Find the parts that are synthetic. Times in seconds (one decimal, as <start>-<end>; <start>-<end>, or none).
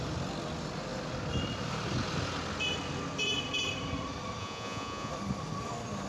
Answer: 4.4-5.1